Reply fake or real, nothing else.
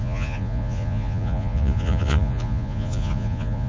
fake